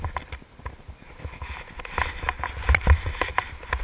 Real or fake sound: real